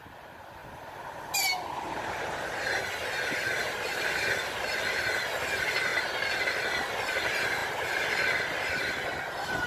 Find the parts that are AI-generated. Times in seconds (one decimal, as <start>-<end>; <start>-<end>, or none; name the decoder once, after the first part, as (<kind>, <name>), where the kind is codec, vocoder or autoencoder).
0.0-0.6 (vocoder, BigVGAN v2); 3.3-5.9; 6.4-9.7